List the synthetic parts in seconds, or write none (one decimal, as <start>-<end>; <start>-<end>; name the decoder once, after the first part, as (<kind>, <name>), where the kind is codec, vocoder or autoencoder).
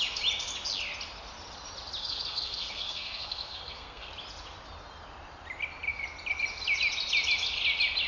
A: 2.0-4.1 (codec, SNAC)